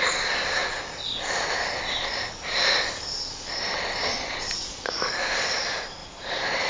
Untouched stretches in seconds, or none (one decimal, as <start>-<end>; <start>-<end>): 0.0-6.0